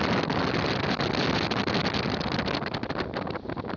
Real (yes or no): yes